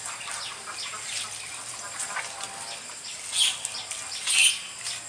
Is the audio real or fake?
real